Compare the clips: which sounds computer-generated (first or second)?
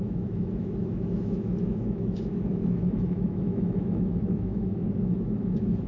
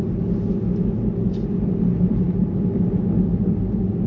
first